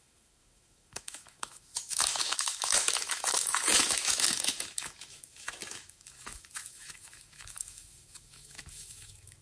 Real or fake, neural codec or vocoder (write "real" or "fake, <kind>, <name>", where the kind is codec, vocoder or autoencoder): fake, autoencoder, DAC-VAE